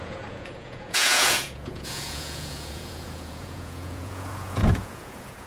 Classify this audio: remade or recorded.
remade